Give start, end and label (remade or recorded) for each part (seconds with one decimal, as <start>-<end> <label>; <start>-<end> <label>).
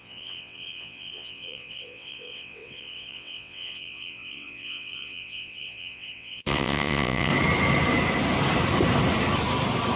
0.0-7.3 remade; 7.3-10.0 recorded